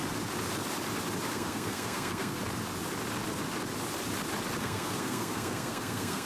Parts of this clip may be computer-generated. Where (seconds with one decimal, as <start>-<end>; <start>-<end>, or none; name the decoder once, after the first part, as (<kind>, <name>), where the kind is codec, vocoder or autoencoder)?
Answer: 1.3-2.4 (codec, SNAC); 4.6-6.3